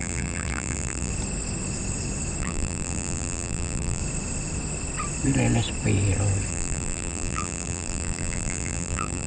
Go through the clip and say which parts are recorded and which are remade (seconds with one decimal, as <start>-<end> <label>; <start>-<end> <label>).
0.0-1.1 remade; 1.1-2.4 recorded; 2.4-4.0 remade; 4.0-6.5 recorded; 6.5-9.3 remade